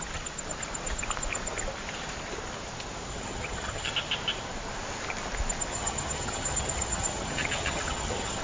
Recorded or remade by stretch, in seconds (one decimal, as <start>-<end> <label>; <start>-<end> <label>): 0.0-3.1 recorded; 3.1-3.9 remade; 3.9-5.7 recorded; 5.7-8.4 remade